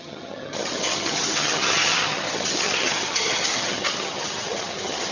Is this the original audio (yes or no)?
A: no